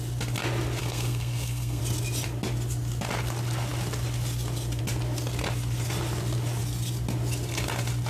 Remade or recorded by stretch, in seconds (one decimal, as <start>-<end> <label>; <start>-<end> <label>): 0.0-0.8 recorded; 0.8-1.8 remade; 1.8-8.1 recorded